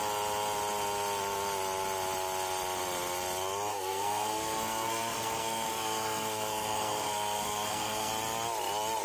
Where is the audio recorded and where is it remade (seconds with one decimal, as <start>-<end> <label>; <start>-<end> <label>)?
0.0-3.7 recorded; 3.7-8.1 remade; 8.1-9.0 recorded